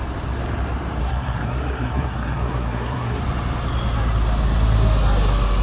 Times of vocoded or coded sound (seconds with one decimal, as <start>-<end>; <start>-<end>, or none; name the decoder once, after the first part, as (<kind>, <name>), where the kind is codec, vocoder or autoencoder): 1.0-3.2 (codec, SNAC)